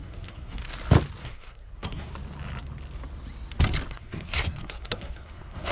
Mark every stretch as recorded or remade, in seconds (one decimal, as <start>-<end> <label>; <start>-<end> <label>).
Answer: 0.0-0.6 remade; 0.6-1.2 recorded; 1.2-2.1 remade; 2.1-3.9 recorded; 3.9-5.7 remade